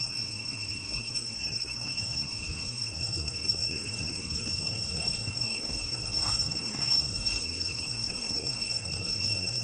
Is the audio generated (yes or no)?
yes